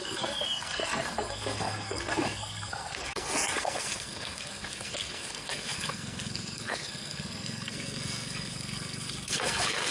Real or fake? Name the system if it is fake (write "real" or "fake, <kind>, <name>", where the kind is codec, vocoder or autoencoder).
fake, codec, SNAC